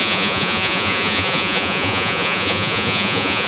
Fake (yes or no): yes